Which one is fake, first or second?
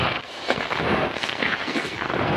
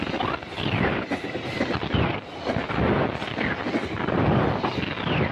first